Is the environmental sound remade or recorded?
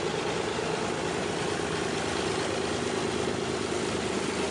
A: recorded